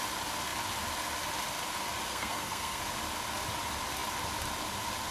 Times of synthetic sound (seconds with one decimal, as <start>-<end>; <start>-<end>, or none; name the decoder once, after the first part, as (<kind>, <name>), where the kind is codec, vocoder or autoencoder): 2.1-2.8 (codec, SNAC)

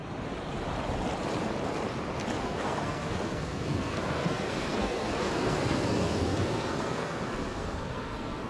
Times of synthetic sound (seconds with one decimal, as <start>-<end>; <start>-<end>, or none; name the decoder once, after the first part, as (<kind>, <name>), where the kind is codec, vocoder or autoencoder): 2.4-8.5 (codec, SNAC)

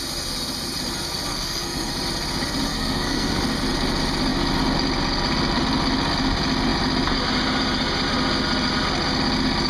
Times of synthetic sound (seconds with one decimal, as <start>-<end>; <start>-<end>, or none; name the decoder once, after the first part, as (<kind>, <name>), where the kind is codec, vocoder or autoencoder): 1.3-1.9 (codec, SNAC); 2.7-3.4

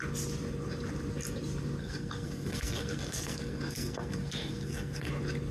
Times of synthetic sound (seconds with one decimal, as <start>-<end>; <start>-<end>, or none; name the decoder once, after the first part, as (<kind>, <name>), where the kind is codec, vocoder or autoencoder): 1.8-5.1 (codec, SNAC)